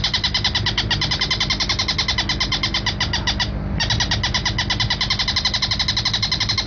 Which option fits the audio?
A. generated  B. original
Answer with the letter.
B